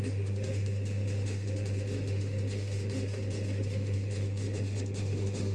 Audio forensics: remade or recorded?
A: remade